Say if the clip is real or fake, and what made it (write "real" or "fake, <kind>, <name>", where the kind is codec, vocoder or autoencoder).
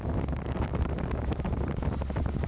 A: real